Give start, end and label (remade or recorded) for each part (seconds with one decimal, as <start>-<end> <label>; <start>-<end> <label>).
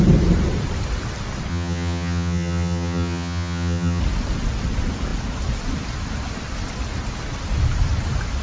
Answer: 0.0-1.5 recorded; 1.5-4.0 remade; 4.0-8.4 recorded